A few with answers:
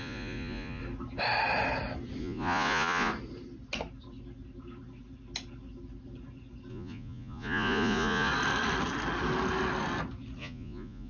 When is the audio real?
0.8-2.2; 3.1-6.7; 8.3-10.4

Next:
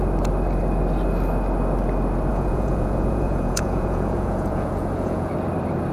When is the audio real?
0.0-2.3; 5.3-5.9

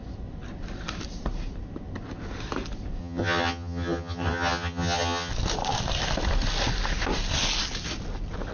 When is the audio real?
0.0-3.0; 5.3-8.5